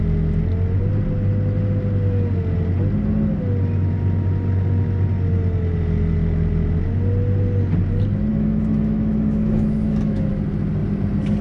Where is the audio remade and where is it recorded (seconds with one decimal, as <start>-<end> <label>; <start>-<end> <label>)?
0.0-8.3 recorded; 8.3-10.3 remade; 10.3-11.4 recorded